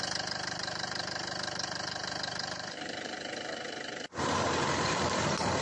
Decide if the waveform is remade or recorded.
remade